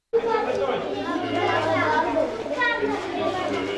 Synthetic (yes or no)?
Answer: no